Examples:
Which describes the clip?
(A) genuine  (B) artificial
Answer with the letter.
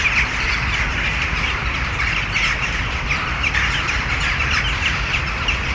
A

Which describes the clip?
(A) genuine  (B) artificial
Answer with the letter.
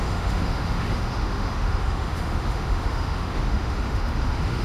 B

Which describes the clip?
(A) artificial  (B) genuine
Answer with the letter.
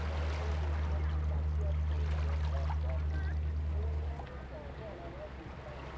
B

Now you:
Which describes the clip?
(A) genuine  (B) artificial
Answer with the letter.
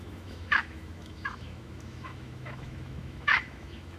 B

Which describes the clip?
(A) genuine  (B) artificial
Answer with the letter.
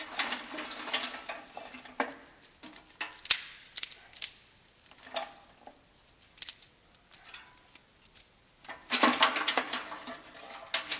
A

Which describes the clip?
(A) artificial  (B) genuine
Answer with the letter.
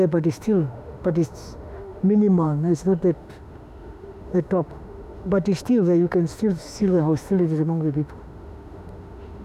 A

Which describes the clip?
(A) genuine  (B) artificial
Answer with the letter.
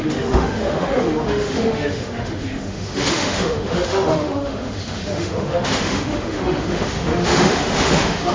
B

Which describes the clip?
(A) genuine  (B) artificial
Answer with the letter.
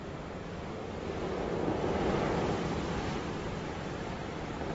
A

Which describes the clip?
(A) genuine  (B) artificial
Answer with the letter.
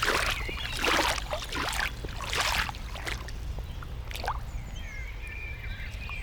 A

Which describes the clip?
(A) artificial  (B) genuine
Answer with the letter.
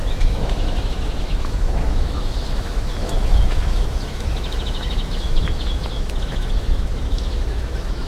A